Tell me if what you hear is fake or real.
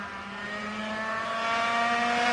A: real